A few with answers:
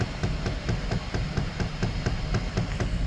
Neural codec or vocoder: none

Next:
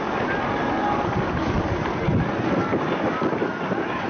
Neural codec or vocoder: none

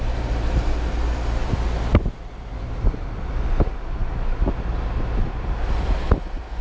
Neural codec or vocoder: none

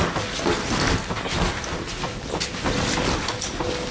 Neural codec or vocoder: none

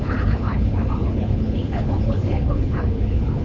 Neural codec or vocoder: codec, HILCodec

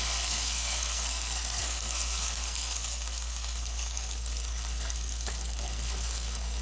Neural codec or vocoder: codec, SNAC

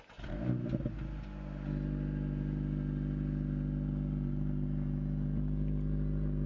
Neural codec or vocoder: none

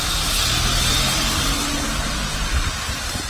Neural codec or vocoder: none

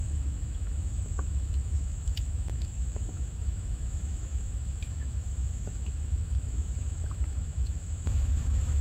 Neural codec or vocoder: autoencoder, DAC-VAE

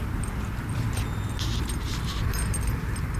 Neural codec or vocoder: vocoder, BigVGAN v2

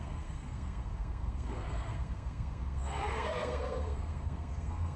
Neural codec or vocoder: codec, SNAC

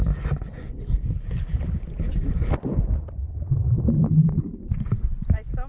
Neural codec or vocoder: vocoder, BigVGAN v2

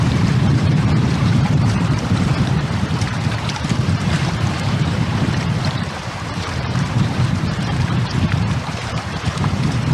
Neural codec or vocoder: vocoder, BigVGAN v2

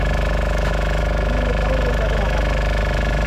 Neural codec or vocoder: autoencoder, DAC-VAE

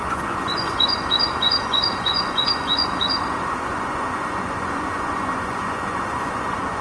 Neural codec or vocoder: vocoder, Vocos